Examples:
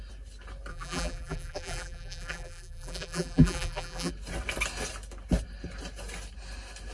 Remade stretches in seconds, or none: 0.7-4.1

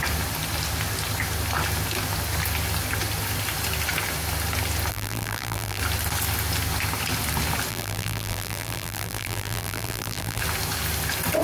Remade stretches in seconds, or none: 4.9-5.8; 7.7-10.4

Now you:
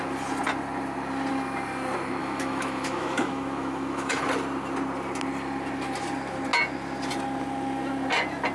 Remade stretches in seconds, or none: 2.2-4.2

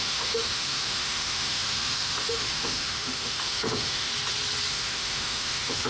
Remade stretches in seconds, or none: 0.0-4.1; 4.7-5.9

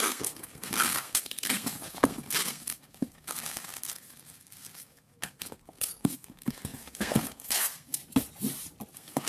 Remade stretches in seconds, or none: 0.0-8.0; 8.9-9.3

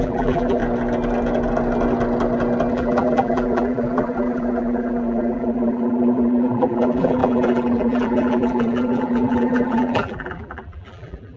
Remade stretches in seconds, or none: 0.0-0.6; 2.7-11.4